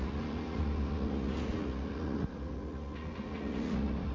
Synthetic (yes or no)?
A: yes